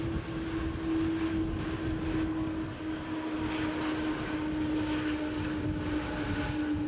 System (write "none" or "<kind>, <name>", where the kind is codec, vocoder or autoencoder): none